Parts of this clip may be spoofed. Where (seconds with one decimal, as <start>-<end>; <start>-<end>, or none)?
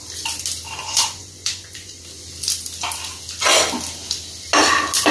0.8-2.0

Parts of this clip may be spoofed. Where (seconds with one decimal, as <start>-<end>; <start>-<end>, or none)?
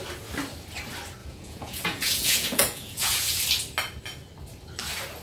1.2-3.4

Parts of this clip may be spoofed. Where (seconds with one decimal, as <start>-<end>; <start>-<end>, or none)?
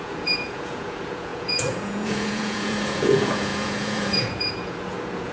0.0-5.3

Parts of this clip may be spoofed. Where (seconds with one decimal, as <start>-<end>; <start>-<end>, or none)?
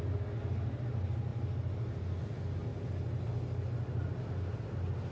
none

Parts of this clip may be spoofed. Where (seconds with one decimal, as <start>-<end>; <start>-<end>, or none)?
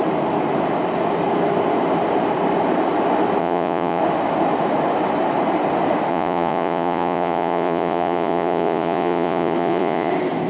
3.4-4.0; 6.1-10.1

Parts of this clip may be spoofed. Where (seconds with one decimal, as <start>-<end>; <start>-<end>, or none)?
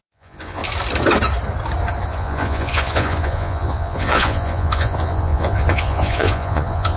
0.0-0.6; 2.1-7.0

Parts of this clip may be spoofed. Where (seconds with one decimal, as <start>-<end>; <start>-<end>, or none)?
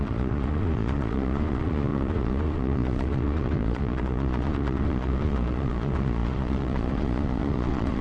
0.0-8.0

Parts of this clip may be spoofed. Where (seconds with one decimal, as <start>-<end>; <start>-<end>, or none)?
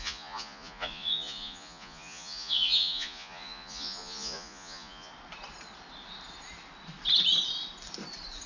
0.0-5.1